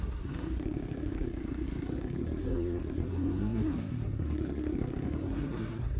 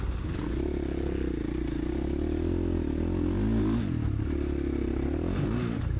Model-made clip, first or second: first